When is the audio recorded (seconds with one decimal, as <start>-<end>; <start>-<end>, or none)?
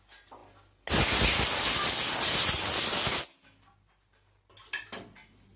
0.0-5.6